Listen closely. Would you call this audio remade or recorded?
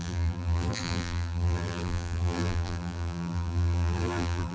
remade